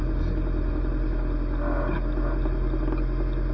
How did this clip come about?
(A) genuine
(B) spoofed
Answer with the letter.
A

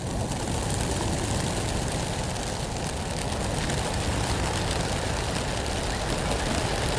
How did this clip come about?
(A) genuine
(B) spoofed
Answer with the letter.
A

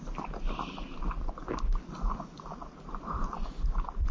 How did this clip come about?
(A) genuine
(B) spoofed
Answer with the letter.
A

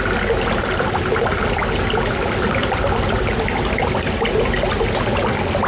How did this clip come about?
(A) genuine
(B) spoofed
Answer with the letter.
A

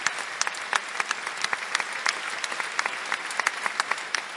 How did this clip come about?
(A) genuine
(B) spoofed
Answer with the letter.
A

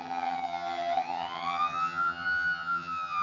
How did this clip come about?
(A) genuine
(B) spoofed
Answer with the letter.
B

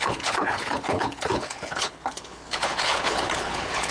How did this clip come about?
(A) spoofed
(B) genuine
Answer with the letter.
A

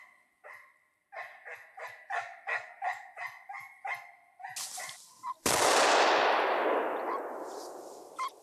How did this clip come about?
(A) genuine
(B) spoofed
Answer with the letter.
A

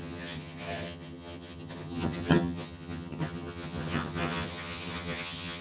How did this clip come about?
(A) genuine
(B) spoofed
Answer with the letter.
B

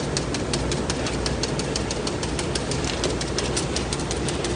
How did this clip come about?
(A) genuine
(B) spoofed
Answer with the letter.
A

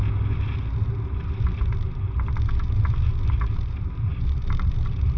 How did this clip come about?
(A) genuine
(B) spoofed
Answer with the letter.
A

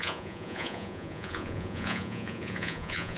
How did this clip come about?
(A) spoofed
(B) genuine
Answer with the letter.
A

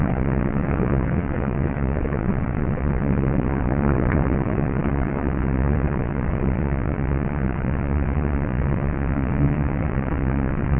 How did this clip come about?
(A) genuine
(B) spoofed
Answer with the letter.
B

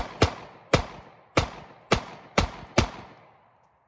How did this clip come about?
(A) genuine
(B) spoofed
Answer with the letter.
A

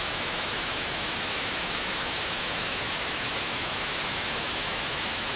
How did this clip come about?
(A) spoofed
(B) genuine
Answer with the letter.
A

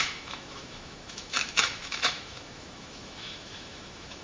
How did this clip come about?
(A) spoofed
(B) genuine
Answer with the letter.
A